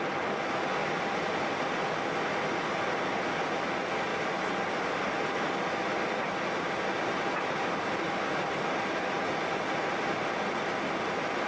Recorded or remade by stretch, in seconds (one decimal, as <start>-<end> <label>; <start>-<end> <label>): 0.0-11.5 recorded